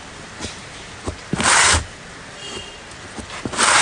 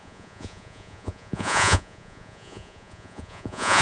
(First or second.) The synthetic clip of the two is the second